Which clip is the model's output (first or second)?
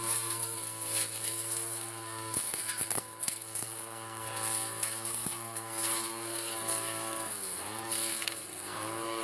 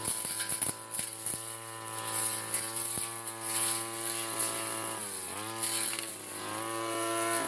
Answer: first